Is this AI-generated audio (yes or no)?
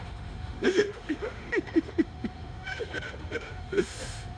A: yes